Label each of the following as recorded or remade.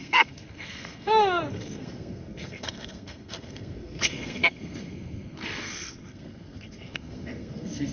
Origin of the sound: remade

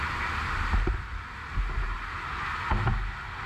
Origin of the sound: recorded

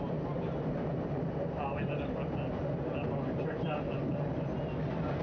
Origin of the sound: recorded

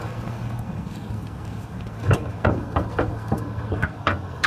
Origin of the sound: remade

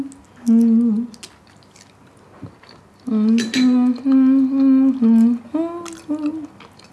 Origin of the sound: recorded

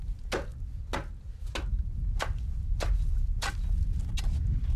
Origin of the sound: recorded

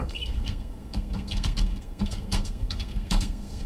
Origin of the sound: remade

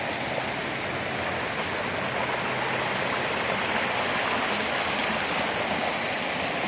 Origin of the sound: recorded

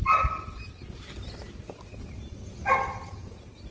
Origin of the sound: recorded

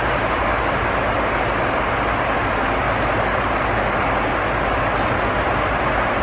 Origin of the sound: recorded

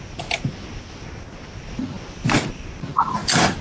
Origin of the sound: recorded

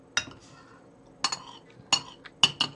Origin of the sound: recorded